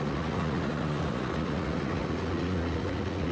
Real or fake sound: fake